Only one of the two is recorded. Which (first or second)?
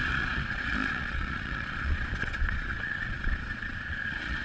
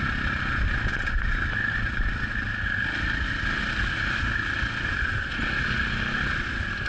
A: second